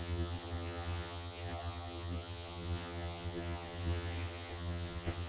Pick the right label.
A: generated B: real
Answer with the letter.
A